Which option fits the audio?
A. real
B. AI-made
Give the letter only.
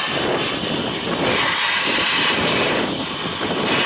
A